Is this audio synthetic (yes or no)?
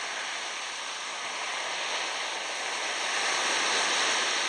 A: no